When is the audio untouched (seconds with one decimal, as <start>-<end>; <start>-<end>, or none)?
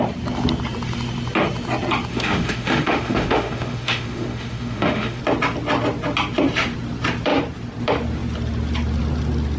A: 0.0-2.1; 5.2-9.6